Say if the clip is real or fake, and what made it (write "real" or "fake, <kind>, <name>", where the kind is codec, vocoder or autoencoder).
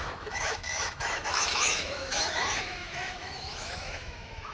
fake, autoencoder, DAC-VAE